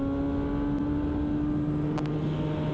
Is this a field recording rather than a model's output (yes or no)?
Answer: yes